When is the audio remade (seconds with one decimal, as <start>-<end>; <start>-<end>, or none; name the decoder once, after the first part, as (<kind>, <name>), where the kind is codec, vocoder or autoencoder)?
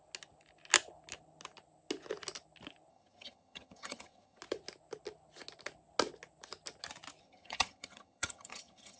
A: 2.9-4.4 (vocoder, HiFi-GAN); 7.2-9.0